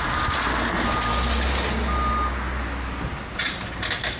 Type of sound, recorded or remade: recorded